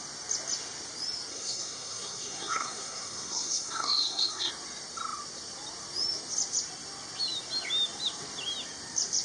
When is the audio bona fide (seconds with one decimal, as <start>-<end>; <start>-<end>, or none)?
0.0-1.3; 4.5-9.2